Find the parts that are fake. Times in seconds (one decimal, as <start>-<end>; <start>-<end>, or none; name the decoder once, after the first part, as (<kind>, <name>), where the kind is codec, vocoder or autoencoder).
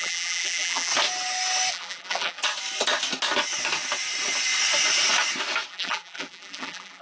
0.0-0.9 (vocoder, BigVGAN v2); 1.7-2.4; 5.7-7.0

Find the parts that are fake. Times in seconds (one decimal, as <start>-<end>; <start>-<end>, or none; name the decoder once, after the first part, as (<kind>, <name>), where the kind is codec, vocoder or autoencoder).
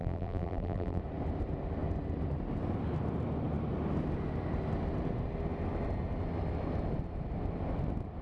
0.0-1.0 (vocoder, BigVGAN v2)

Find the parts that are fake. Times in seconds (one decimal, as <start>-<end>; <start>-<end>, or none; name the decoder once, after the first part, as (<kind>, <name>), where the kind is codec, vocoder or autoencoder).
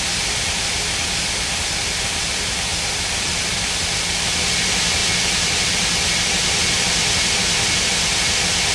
2.7-3.4 (vocoder, BigVGAN v2)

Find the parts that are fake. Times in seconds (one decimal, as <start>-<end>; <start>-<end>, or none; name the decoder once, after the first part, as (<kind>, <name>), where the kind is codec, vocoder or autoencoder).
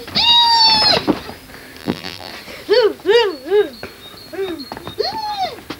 1.8-2.3 (vocoder, BigVGAN v2)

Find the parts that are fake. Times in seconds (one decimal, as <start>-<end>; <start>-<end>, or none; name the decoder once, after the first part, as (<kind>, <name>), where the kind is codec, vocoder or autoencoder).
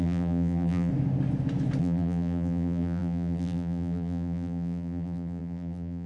0.0-0.9 (vocoder, BigVGAN v2); 1.8-6.1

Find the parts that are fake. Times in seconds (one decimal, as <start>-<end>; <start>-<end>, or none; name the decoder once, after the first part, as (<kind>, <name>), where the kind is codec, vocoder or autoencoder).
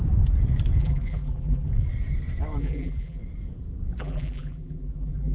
0.8-1.7 (vocoder, BigVGAN v2); 2.6-3.2; 4.0-5.3